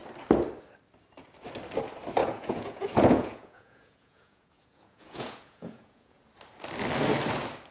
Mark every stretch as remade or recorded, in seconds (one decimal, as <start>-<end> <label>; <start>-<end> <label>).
0.0-2.2 recorded; 2.2-6.2 remade; 6.2-7.7 recorded